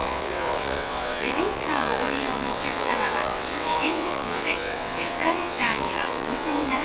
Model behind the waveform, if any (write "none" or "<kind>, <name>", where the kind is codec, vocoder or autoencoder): vocoder, WaveNeXt